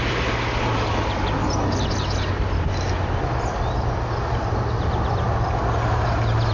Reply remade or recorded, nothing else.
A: recorded